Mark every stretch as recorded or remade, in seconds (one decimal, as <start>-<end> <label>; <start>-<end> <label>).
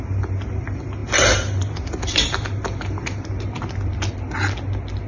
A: 0.0-5.1 recorded